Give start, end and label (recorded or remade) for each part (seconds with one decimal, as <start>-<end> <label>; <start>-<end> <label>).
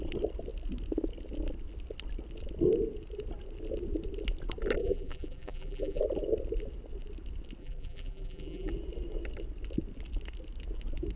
0.0-4.8 recorded; 4.8-6.0 remade; 6.0-7.6 recorded; 7.6-8.7 remade; 8.7-11.2 recorded